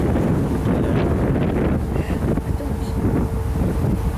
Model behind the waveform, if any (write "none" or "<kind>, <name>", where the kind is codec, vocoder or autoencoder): none